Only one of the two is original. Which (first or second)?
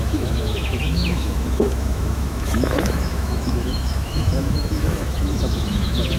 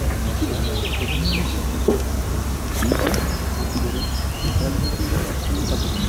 second